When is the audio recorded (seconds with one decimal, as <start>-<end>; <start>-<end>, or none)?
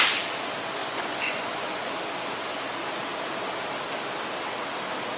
0.0-0.8; 1.9-5.2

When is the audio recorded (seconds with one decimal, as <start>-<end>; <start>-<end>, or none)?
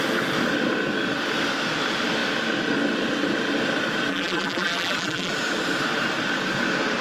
0.0-4.1; 5.3-7.0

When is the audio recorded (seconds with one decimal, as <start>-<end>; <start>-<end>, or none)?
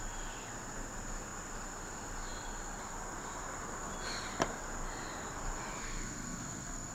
0.0-5.8